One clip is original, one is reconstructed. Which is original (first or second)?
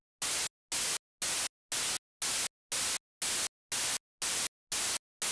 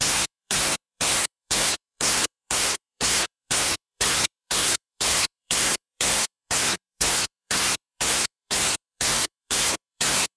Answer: first